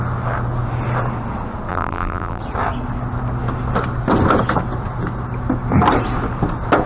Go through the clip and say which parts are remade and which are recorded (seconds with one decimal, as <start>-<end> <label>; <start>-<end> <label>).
0.0-1.7 recorded; 1.7-2.4 remade; 2.4-6.9 recorded